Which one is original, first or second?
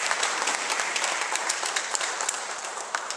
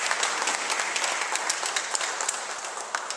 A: second